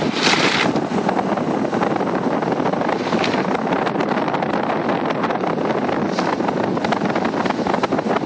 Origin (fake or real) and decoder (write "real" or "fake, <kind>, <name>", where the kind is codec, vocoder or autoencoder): real